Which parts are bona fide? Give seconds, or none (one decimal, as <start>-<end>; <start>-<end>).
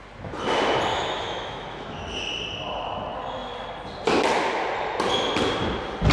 0.0-0.9; 2.0-6.1